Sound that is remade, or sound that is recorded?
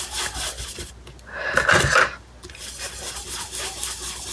recorded